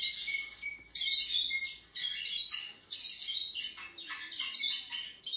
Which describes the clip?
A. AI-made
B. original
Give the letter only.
B